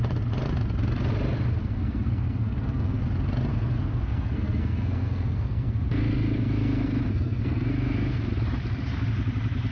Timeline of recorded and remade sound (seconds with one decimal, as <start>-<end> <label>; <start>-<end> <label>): 0.0-1.6 recorded; 1.6-3.0 remade; 3.0-3.5 recorded; 3.5-8.3 remade; 8.3-9.7 recorded